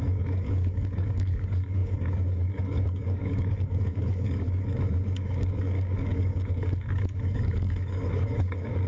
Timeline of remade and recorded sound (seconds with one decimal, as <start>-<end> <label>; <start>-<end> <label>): 0.0-8.9 remade